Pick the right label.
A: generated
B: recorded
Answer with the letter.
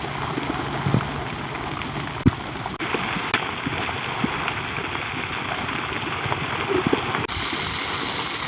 B